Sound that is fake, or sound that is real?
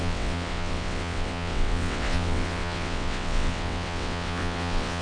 fake